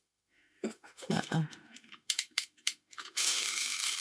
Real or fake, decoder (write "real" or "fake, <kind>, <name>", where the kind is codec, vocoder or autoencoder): fake, autoencoder, DAC-VAE